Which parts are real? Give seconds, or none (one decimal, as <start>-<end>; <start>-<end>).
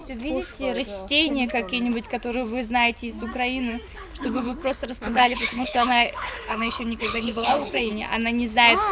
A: 0.0-3.9; 7.9-8.9